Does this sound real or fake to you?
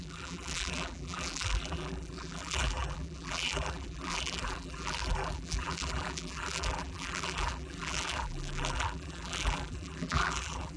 fake